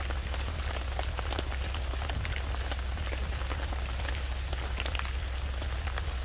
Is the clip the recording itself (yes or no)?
yes